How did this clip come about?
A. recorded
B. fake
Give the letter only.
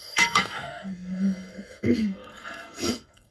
B